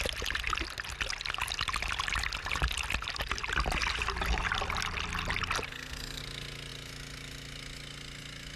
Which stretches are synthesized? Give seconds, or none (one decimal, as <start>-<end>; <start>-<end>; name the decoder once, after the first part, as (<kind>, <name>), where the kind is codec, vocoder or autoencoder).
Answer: 5.7-6.2 (codec, SNAC)